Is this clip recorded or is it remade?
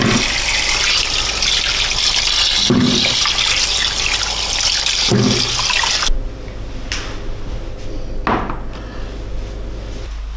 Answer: recorded